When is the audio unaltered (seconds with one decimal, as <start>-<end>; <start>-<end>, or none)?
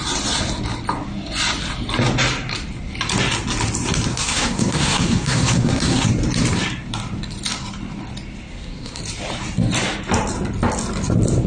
0.0-4.1; 6.1-8.5; 9.0-11.5